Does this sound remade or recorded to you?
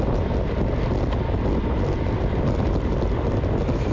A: recorded